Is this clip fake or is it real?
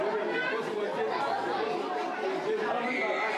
real